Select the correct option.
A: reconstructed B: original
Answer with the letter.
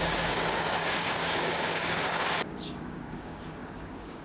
A